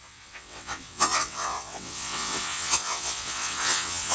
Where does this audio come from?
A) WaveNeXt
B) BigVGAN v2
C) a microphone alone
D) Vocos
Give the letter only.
A